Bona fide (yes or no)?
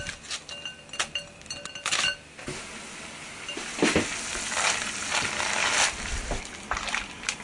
yes